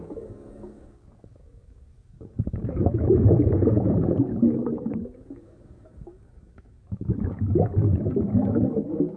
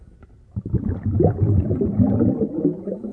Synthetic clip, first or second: first